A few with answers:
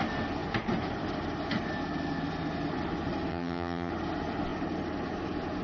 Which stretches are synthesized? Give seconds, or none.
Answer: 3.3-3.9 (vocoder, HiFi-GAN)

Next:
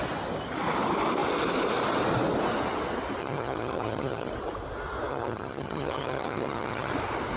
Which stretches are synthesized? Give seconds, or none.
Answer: 3.2-4.3 (vocoder, HiFi-GAN); 5.1-6.9

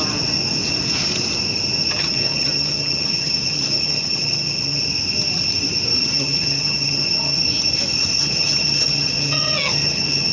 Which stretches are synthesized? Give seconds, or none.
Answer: 2.0-4.8 (vocoder, HiFi-GAN); 6.0-7.4; 8.1-10.3

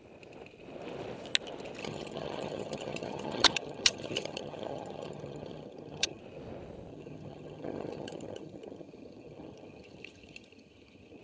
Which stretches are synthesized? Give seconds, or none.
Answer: 1.8-6.2 (vocoder, HiFi-GAN); 6.9-11.2

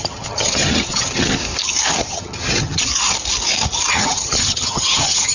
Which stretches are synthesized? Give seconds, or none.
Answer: 0.0-1.4 (vocoder, HiFi-GAN); 2.0-2.9; 3.9-5.3

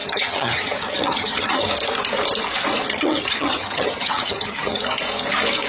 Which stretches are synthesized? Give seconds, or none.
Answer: 0.0-1.7 (vocoder, HiFi-GAN); 2.9-4.8

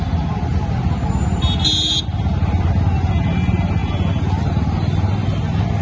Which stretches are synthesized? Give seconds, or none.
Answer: none